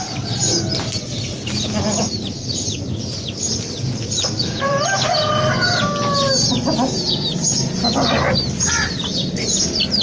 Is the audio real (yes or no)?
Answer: yes